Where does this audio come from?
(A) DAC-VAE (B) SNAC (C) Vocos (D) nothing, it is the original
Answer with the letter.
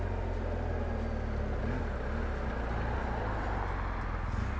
D